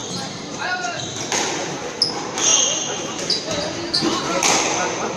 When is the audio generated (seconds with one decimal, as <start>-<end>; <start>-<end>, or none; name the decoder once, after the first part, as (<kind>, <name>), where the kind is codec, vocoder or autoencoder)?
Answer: none